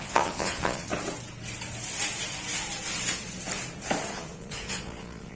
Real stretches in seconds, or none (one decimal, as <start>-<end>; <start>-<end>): 0.9-4.1